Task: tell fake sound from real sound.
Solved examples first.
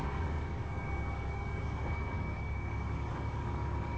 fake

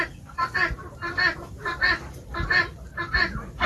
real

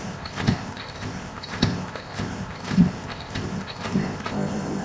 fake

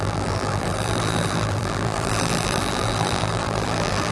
fake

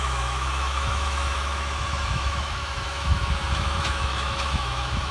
fake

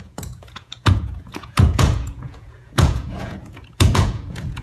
fake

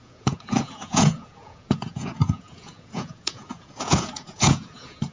fake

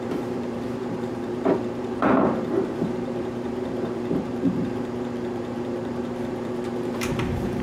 fake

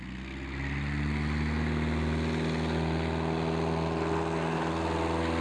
real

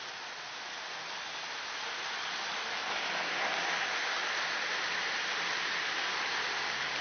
real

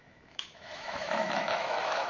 fake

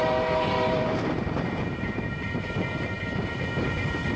fake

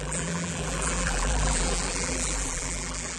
fake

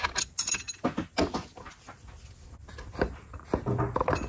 real